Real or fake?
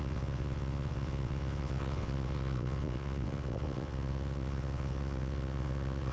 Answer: fake